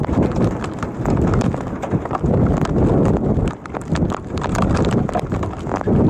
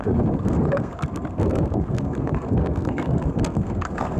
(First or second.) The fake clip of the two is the second